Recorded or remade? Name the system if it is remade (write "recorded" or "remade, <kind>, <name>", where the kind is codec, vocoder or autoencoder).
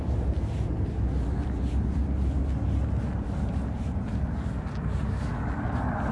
recorded